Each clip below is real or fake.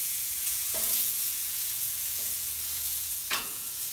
fake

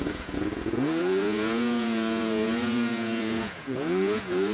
fake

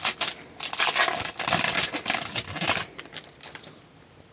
real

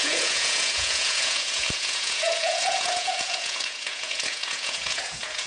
fake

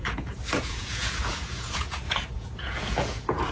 fake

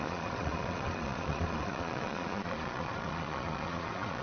fake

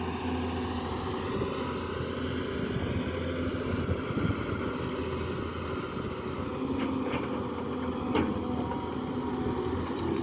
real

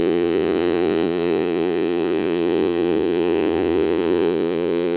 fake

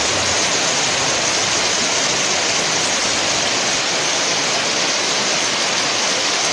real